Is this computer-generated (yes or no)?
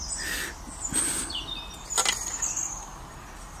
no